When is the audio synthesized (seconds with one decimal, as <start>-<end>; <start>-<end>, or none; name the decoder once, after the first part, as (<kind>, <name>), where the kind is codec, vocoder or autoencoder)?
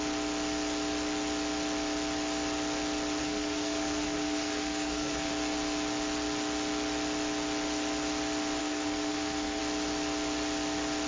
3.2-5.3 (codec, SNAC); 8.6-9.6